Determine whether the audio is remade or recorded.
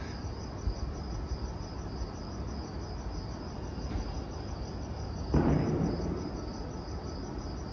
recorded